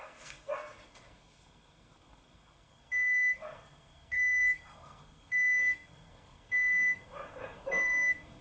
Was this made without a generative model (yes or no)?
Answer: no